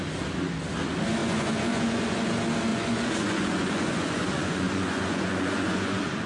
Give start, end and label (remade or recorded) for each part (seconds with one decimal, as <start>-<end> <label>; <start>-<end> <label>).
0.0-1.2 recorded; 1.2-2.3 remade; 2.3-2.7 recorded; 2.7-6.3 remade